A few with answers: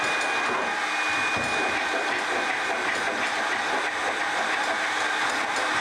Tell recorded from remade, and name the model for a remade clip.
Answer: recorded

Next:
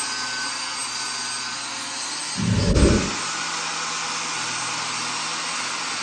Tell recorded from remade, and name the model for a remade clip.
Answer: recorded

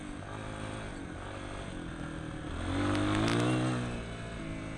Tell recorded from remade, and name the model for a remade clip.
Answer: recorded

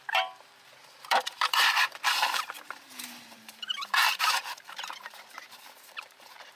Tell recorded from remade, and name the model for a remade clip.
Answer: remade, vocoder, BigVGAN v2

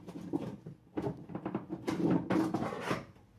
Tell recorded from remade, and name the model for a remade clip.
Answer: recorded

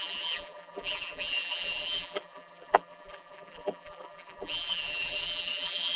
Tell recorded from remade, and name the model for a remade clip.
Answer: remade, vocoder, BigVGAN v2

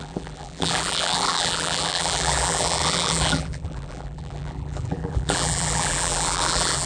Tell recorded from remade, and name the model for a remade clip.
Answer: remade, vocoder, BigVGAN v2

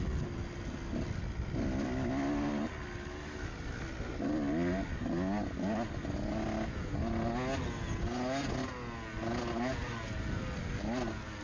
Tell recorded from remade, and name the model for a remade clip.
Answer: recorded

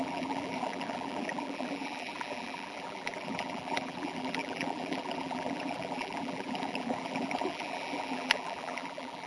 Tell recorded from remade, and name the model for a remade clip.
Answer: remade, vocoder, BigVGAN v2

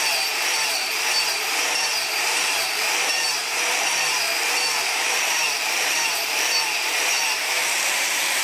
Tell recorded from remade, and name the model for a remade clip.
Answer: remade, vocoder, BigVGAN v2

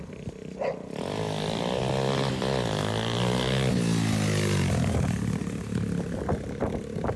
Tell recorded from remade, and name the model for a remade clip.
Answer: recorded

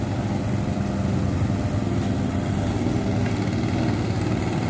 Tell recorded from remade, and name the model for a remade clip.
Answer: recorded